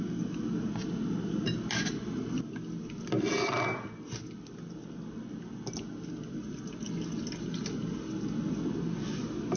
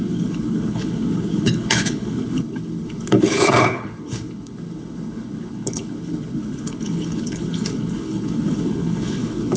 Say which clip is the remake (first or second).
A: second